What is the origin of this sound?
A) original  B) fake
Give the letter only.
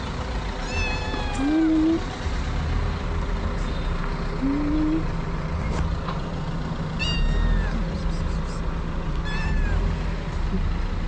A